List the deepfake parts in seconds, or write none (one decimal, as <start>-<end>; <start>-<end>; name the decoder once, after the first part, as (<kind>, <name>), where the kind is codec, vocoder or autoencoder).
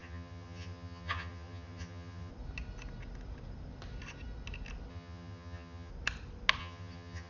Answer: 0.0-2.3 (vocoder, HiFi-GAN); 4.9-5.9; 6.6-7.3